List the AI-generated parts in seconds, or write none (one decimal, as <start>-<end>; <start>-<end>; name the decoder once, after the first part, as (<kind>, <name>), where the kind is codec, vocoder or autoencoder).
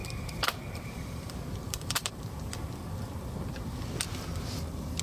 0.0-2.6 (vocoder, BigVGAN v2)